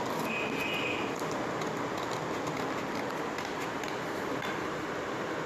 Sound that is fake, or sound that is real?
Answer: real